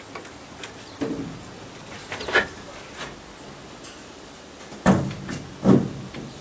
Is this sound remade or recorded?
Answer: recorded